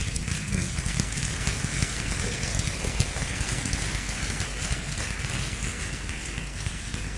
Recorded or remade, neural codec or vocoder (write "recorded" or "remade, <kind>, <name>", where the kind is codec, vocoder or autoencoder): remade, codec, SNAC